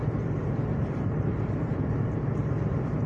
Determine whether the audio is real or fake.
fake